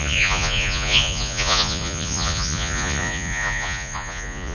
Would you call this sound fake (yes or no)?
yes